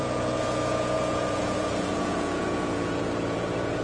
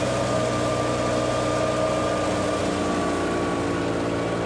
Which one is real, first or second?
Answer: second